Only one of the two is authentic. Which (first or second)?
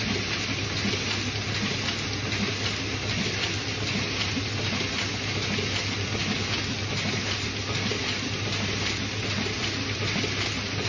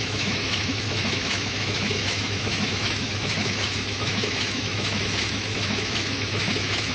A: first